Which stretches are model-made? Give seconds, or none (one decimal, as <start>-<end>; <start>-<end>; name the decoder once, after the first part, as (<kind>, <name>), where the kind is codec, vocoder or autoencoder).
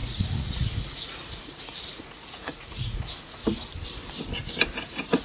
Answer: 0.0-3.4 (vocoder, Vocos); 4.7-5.2